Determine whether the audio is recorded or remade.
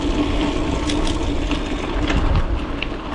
recorded